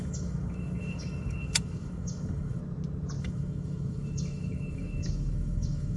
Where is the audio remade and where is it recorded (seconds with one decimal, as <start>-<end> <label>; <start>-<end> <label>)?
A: 0.0-2.6 remade; 2.6-3.2 recorded; 3.2-6.0 remade